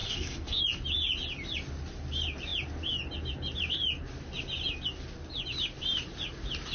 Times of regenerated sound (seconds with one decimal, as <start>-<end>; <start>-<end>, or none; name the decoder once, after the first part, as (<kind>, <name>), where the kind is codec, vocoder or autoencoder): 0.0-0.6 (codec, SNAC)